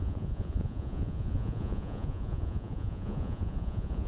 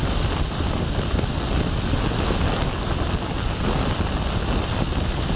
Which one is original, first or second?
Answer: second